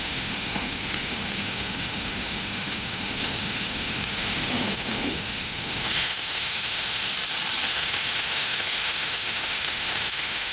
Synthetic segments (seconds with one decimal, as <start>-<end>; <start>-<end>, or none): 0.0-7.1; 7.7-10.5